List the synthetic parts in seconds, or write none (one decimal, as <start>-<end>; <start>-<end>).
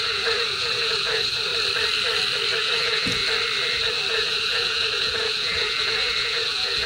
0.0-1.5; 2.6-3.2; 4.1-6.9